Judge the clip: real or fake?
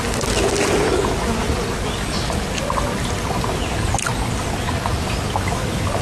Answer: real